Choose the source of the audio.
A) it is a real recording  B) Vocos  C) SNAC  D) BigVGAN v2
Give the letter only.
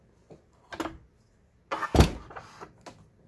A